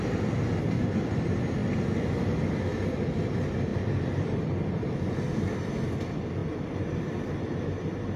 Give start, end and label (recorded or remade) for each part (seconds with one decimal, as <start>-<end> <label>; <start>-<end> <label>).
0.0-3.7 recorded; 3.7-4.9 remade; 4.9-6.4 recorded; 6.4-7.0 remade; 7.0-8.2 recorded